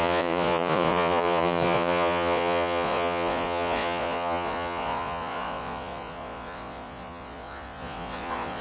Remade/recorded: remade